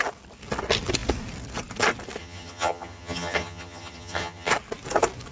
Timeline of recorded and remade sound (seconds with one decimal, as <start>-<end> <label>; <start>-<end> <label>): 0.0-2.2 recorded; 2.2-4.5 remade; 4.5-5.3 recorded